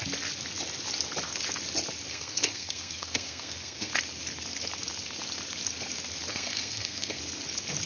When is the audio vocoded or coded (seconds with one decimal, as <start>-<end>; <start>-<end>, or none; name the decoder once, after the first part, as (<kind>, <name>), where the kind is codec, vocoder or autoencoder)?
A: 2.1-3.9 (codec, SNAC); 6.3-7.2